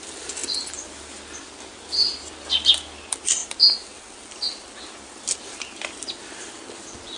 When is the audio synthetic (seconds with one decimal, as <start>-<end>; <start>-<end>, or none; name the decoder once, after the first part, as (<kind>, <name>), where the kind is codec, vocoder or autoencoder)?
none